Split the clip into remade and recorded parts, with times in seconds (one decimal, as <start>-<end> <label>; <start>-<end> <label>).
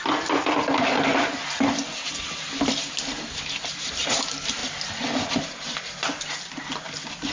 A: 0.0-7.3 recorded